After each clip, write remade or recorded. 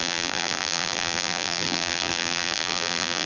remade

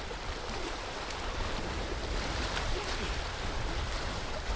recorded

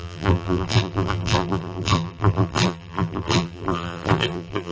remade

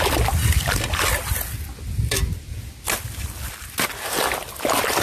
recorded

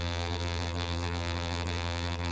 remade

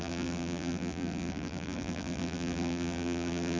remade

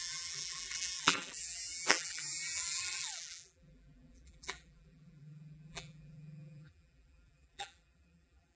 remade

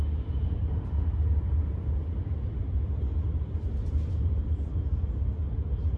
recorded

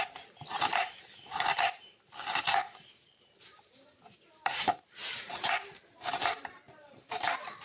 remade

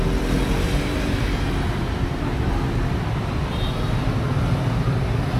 recorded